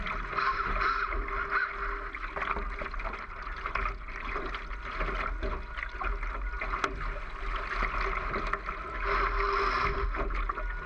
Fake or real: real